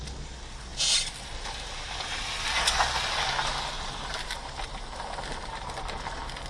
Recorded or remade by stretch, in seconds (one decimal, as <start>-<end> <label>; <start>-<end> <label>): 0.0-6.5 recorded